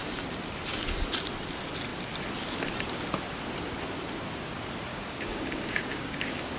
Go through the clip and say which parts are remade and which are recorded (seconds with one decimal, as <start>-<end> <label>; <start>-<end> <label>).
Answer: 0.0-4.9 recorded; 4.9-6.6 remade